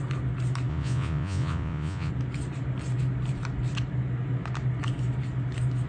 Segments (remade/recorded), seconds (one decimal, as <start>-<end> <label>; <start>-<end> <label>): 0.0-0.7 recorded; 0.7-2.1 remade; 2.1-5.9 recorded